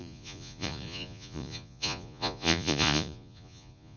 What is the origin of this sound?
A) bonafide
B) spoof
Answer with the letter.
B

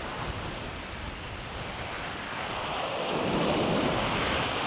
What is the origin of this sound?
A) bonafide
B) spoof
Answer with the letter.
A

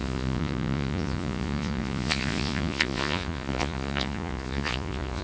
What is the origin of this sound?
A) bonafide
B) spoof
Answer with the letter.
B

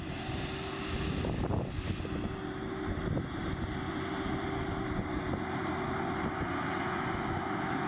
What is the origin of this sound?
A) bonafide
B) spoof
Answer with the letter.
A